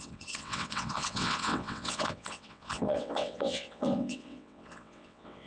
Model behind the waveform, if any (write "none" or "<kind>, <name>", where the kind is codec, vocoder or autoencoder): vocoder, WaveNeXt